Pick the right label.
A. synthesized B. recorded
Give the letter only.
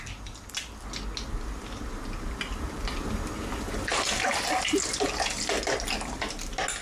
B